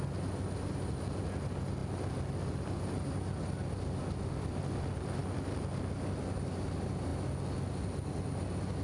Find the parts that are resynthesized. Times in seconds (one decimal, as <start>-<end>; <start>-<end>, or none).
none